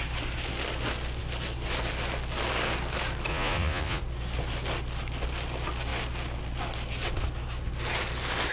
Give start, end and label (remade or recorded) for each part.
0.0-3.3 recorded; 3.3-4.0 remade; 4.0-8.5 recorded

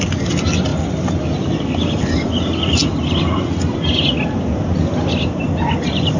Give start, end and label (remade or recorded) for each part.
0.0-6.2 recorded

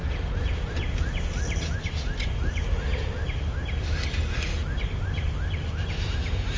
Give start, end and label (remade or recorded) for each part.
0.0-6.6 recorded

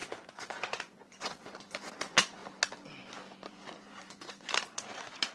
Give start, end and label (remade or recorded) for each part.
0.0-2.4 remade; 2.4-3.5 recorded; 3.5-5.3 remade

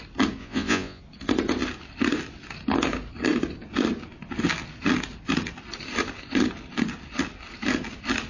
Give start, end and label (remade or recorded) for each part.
0.0-0.4 recorded; 0.4-1.0 remade; 1.0-8.3 recorded

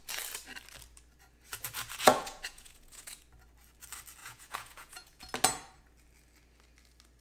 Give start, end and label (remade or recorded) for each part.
0.0-2.0 recorded; 2.0-3.2 remade; 3.2-4.2 recorded; 4.2-5.2 remade; 5.2-7.2 recorded